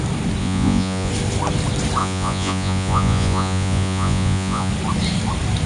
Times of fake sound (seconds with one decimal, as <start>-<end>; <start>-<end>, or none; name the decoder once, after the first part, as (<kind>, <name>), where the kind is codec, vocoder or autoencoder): 0.4-1.1 (vocoder, Vocos); 2.0-4.7